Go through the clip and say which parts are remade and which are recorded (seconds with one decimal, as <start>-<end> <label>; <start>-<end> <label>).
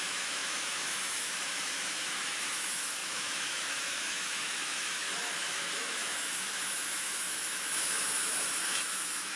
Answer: 0.0-9.4 remade